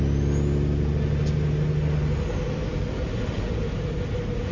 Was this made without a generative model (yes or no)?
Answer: yes